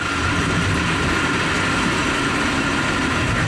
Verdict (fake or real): real